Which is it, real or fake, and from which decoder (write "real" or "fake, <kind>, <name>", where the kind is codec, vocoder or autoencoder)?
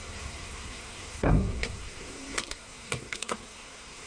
fake, codec, SNAC